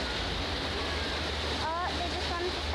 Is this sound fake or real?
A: real